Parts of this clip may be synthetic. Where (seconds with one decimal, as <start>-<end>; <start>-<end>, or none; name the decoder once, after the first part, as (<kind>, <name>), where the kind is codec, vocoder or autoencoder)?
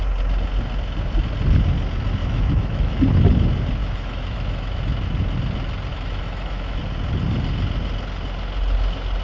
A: 2.2-3.0 (autoencoder, DAC-VAE); 3.8-4.8; 5.9-6.8